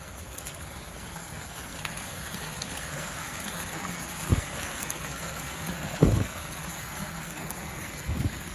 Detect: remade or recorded remade